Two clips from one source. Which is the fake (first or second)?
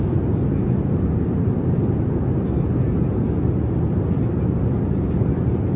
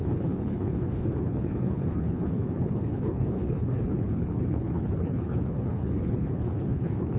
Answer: second